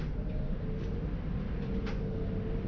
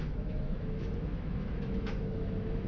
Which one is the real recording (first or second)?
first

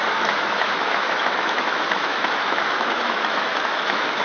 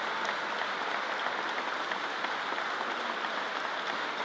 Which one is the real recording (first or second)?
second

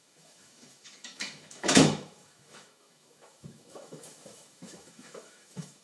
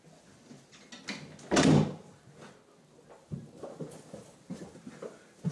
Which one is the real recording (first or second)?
second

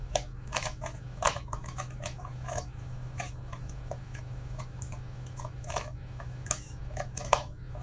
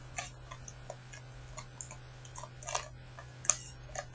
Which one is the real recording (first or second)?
second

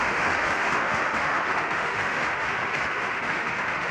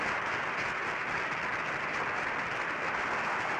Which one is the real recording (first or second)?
second